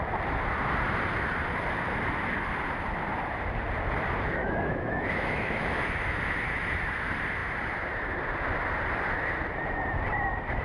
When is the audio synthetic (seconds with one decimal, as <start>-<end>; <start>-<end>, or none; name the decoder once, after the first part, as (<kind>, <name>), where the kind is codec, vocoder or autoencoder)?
4.4-6.7 (autoencoder, DAC-VAE)